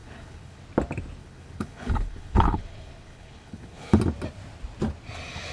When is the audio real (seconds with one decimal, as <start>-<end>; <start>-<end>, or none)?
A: 0.6-1.2; 4.0-5.5